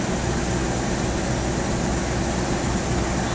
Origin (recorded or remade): recorded